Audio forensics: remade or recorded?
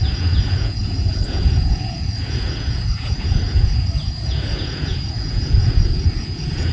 remade